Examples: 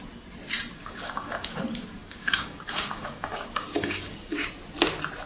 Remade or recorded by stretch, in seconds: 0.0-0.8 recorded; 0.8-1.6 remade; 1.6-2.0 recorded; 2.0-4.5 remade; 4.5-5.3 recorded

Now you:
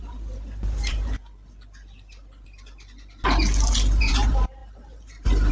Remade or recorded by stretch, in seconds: 0.0-1.2 remade; 1.2-4.0 recorded; 4.0-5.5 remade

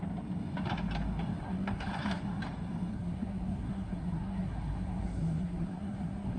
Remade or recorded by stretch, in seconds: 0.0-1.4 recorded; 1.4-2.2 remade; 2.2-2.9 recorded; 2.9-6.4 remade

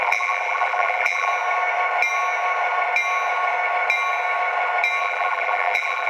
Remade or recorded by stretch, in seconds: 0.0-1.3 remade; 1.3-5.0 recorded; 5.0-6.1 remade

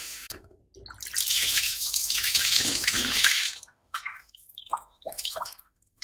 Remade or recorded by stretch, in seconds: 0.0-0.6 remade; 0.6-1.3 recorded; 1.3-6.0 remade

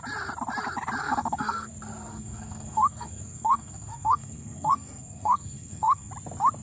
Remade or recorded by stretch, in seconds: 0.0-1.0 recorded; 1.0-1.7 remade; 1.7-2.1 recorded; 2.1-6.1 remade; 6.1-6.6 recorded

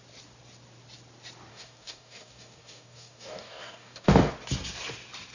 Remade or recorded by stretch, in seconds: 0.0-1.5 recorded; 1.5-4.3 remade; 4.3-5.3 recorded

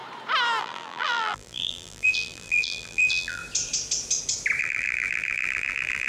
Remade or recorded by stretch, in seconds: 0.0-0.6 recorded; 0.6-3.4 remade; 3.4-4.6 recorded; 4.6-6.1 remade